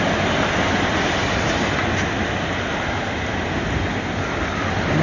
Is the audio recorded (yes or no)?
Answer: yes